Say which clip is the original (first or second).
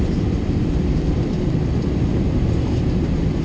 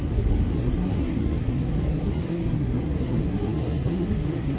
first